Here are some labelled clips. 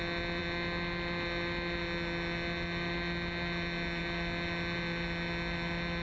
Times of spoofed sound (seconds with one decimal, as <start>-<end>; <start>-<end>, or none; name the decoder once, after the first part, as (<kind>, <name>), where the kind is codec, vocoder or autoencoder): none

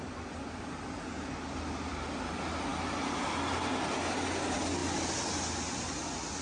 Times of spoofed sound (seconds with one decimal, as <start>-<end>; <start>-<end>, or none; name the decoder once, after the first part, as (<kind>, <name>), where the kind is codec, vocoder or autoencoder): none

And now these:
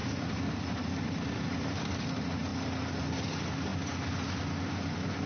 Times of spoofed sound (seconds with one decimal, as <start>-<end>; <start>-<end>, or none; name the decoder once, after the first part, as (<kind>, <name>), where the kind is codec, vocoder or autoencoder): none

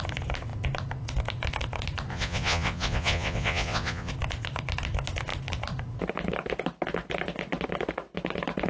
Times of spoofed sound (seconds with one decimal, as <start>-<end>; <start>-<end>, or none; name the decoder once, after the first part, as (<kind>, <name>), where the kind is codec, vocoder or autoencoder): 2.1-4.1 (vocoder, Vocos)

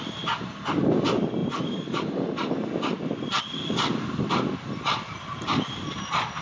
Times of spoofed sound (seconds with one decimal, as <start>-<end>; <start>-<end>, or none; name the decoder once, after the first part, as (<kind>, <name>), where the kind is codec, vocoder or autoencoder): none

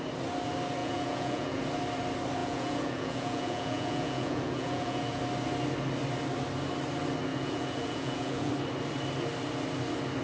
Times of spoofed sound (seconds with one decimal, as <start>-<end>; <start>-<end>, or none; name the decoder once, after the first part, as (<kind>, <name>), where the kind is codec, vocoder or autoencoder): 0.8-1.6 (vocoder, Vocos); 2.4-5.2; 7.3-8.5